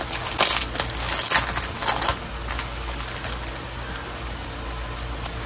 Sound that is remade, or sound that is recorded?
recorded